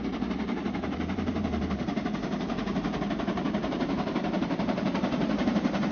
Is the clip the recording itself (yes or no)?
no